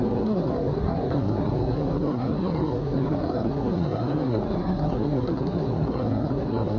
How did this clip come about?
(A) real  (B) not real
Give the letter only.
B